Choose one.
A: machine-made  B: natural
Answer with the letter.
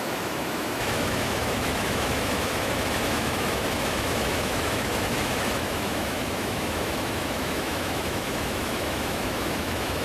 A